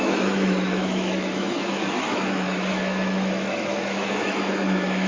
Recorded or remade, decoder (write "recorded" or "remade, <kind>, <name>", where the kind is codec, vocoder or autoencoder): remade, autoencoder, DAC-VAE